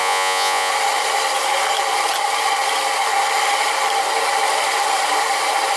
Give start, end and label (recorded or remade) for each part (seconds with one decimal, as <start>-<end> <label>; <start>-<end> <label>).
0.0-0.7 remade; 0.7-5.8 recorded